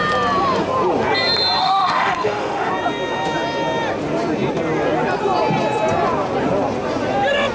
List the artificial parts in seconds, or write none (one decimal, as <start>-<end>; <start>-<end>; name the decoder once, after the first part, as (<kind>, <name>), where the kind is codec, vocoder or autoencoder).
1.6-2.7 (autoencoder, DAC-VAE)